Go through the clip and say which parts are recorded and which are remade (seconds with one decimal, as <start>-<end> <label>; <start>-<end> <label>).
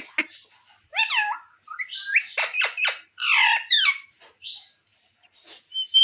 0.0-0.9 recorded; 0.9-4.3 remade; 4.3-4.9 recorded; 4.9-6.0 remade